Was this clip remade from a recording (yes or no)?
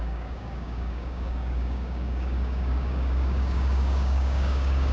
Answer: yes